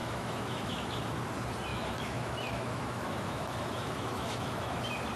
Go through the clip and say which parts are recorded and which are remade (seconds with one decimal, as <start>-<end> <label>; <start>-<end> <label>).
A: 0.0-1.0 remade; 1.0-1.7 recorded; 1.7-4.8 remade; 4.8-5.2 recorded